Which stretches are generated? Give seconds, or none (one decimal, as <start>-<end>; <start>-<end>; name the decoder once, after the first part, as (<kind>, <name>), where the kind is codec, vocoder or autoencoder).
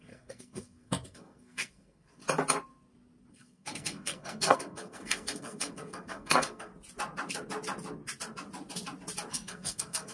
0.0-2.2 (codec, SNAC); 3.3-6.7; 9.3-10.1